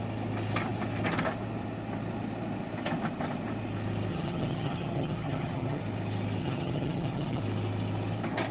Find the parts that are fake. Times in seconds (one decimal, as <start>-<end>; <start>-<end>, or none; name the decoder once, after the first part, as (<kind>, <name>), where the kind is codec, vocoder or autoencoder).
4.1-5.8 (vocoder, HiFi-GAN); 6.4-7.4